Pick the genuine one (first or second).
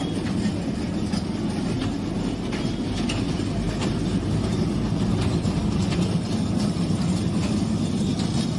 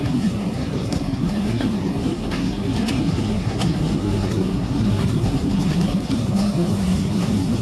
first